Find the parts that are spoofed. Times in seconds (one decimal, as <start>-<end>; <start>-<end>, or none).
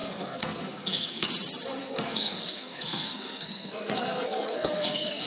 0.0-1.3; 1.8-5.3